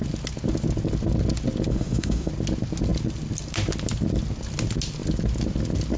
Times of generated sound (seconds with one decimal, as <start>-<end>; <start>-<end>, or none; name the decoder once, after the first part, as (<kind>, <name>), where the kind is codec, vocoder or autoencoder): 1.7-2.3 (autoencoder, DAC-VAE)